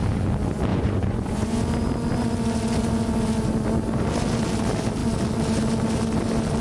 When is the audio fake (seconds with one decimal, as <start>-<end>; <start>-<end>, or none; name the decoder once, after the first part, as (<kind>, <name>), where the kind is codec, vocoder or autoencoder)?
0.7-1.6 (vocoder, Vocos)